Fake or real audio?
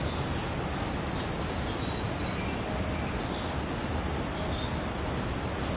real